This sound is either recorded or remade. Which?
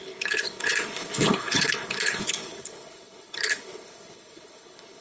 remade